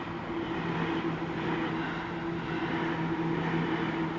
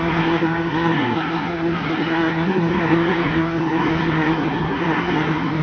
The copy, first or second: second